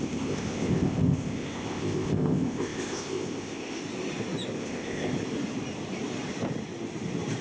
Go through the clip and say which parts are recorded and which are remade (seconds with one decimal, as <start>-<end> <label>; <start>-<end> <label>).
0.0-3.8 remade; 3.8-4.6 recorded; 4.6-5.1 remade; 5.1-7.4 recorded